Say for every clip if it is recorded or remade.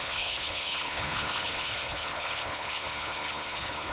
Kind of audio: remade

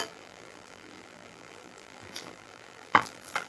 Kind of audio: remade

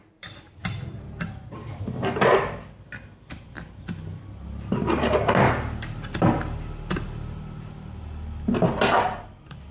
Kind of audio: remade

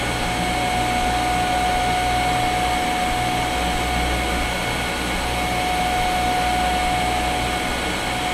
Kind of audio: recorded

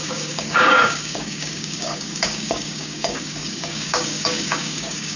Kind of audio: remade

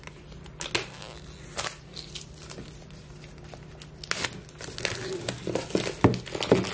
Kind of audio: recorded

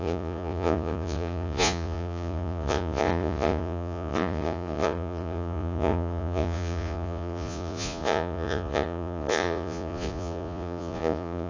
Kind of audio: remade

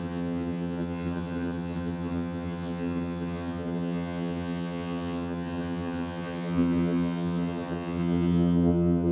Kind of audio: remade